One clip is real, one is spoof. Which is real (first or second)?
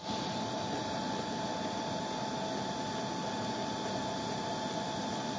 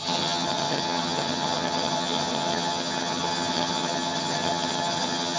first